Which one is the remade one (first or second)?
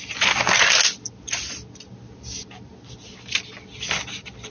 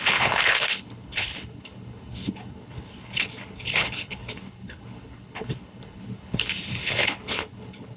second